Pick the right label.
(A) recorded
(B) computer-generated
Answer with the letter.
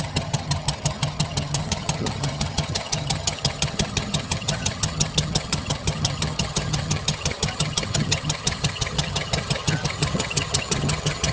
B